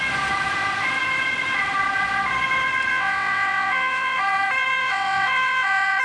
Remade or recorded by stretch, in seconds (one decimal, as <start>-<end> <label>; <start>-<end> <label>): 0.0-2.9 recorded; 2.9-4.2 remade; 4.2-4.8 recorded; 4.8-6.0 remade